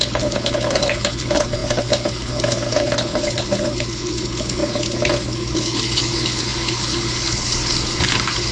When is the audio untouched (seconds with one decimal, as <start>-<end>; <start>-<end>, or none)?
none